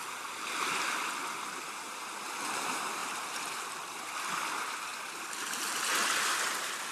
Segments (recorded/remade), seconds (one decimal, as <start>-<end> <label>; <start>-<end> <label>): 0.0-3.0 recorded; 3.0-3.6 remade; 3.6-4.9 recorded; 4.9-5.4 remade; 5.4-6.9 recorded